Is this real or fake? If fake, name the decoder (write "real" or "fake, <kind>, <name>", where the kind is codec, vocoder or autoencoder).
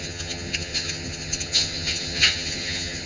fake, vocoder, HiFi-GAN